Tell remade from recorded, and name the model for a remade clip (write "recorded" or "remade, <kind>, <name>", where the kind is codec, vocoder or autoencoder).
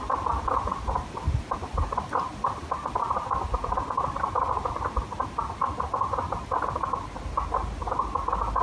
recorded